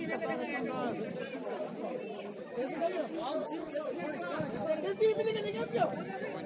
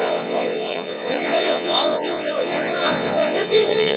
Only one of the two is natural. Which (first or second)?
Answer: first